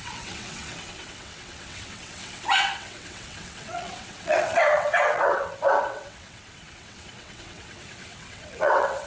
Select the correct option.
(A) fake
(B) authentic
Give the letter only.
A